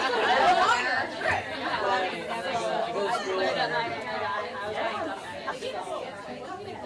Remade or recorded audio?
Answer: recorded